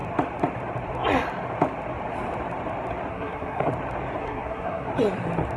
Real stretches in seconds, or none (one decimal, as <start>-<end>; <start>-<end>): 0.0-3.1; 3.7-4.2; 4.9-5.6